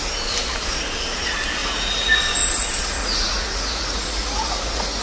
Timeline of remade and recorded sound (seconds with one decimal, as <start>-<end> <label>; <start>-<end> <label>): 0.0-1.6 recorded; 1.6-2.2 remade; 2.2-3.0 recorded; 3.0-5.0 remade

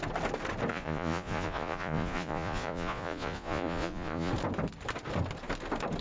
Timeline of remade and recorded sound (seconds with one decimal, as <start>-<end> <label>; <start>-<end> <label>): 0.0-0.7 recorded; 0.7-4.3 remade; 4.3-6.0 recorded

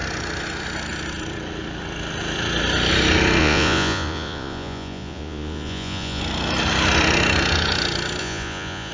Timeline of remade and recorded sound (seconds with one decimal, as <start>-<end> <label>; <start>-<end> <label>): 0.0-3.4 recorded; 3.4-6.2 remade; 6.2-8.2 recorded; 8.2-8.9 remade

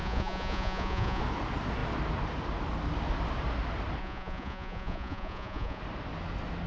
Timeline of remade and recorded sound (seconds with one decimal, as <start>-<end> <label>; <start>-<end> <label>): 0.0-1.2 remade; 1.2-4.0 recorded; 4.0-5.8 remade; 5.8-6.7 recorded